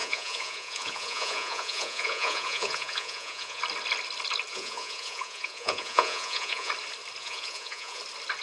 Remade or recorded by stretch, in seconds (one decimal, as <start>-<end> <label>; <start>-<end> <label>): 0.0-3.6 remade; 3.6-4.5 recorded; 4.5-6.7 remade; 6.7-7.2 recorded; 7.2-8.0 remade; 8.0-8.4 recorded